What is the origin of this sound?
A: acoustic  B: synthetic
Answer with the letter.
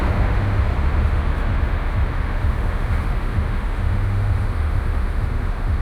B